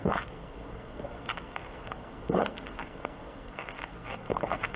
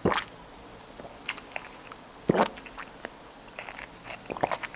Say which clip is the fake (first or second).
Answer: first